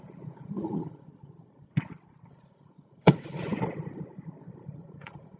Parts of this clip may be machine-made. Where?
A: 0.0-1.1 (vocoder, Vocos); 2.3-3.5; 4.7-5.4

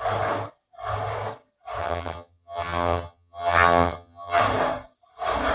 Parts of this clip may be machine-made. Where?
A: 1.8-4.4 (vocoder, HiFi-GAN)

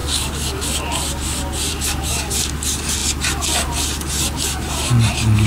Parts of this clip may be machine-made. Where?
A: 0.0-0.7 (codec, DAC); 1.7-2.3

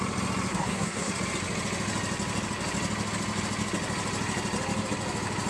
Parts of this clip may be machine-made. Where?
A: 0.5-1.1 (codec, SNAC)